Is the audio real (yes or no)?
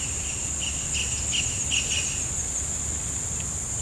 yes